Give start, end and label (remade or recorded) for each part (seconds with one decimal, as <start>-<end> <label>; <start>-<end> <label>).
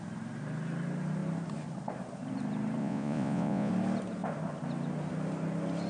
0.0-2.8 recorded; 2.8-3.7 remade; 3.7-5.9 recorded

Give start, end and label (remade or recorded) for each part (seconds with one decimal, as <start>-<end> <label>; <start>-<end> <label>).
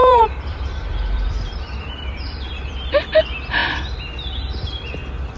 0.0-3.2 remade; 3.2-5.4 recorded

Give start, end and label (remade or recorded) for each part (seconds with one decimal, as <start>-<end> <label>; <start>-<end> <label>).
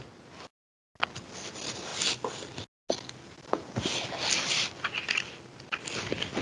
0.0-0.9 remade; 0.9-1.5 recorded; 1.5-1.9 remade; 1.9-5.7 recorded; 5.7-6.4 remade